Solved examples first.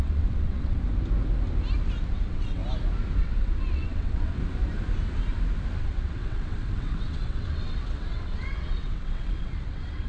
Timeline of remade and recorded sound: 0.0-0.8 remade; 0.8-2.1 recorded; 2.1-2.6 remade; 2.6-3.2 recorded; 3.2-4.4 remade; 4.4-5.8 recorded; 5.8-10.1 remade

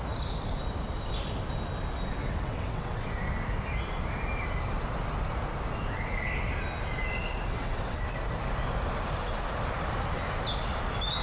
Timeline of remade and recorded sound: 0.0-2.2 recorded; 2.2-3.0 remade; 3.0-7.5 recorded; 7.5-8.0 remade; 8.0-11.2 recorded

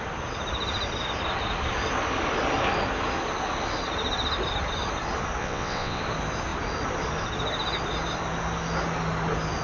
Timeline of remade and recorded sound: 0.0-5.4 recorded; 5.4-6.0 remade; 6.0-9.6 recorded

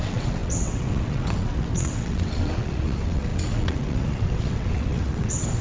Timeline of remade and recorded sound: 0.0-5.6 remade

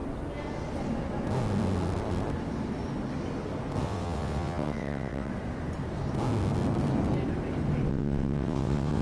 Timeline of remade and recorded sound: 0.0-3.8 recorded; 3.8-5.3 remade; 5.3-7.9 recorded; 7.9-9.0 remade